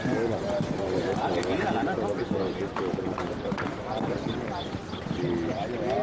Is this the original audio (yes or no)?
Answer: yes